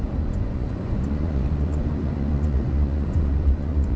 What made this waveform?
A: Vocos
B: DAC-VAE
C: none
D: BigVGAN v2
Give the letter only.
A